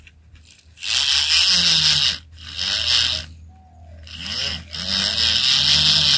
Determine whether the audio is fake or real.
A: real